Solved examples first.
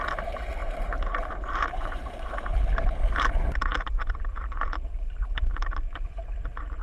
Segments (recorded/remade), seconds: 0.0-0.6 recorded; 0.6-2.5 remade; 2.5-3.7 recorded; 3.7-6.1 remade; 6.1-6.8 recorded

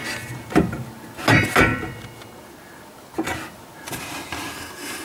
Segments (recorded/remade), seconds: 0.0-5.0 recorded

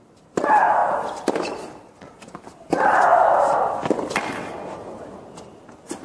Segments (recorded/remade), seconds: 0.0-6.0 recorded

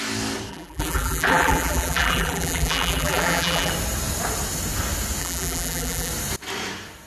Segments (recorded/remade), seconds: 0.0-0.5 recorded; 0.5-3.7 remade; 3.7-5.2 recorded; 5.2-6.1 remade; 6.1-7.1 recorded

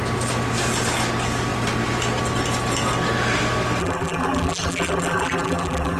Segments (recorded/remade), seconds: 0.0-3.8 recorded; 3.8-6.0 remade

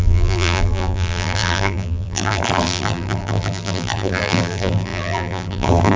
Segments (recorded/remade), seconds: 0.0-6.0 remade

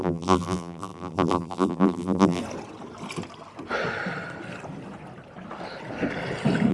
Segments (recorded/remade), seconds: 0.0-2.4 remade; 2.4-6.7 recorded

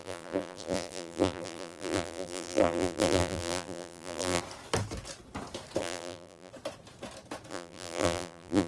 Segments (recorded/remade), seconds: 0.0-4.4 remade; 4.4-5.8 recorded; 5.8-6.5 remade; 6.5-7.5 recorded; 7.5-8.7 remade